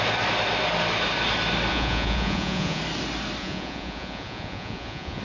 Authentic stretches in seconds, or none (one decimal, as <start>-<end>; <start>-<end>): 0.0-1.7; 2.8-3.4